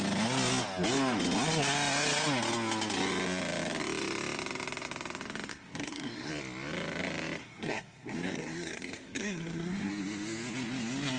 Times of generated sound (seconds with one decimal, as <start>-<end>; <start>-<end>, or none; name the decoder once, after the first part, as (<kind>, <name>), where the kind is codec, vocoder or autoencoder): 5.5-6.3 (codec, SNAC); 7.4-9.9